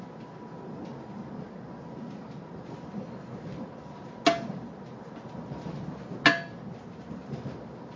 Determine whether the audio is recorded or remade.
recorded